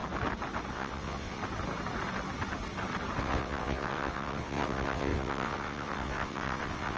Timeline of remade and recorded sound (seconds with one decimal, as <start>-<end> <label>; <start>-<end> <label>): 0.0-0.7 recorded; 0.7-1.4 remade; 1.4-3.2 recorded; 3.2-7.0 remade